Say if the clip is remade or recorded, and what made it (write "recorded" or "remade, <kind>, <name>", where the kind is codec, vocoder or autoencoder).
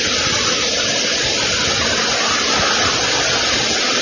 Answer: recorded